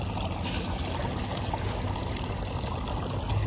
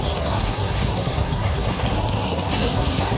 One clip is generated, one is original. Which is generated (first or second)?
second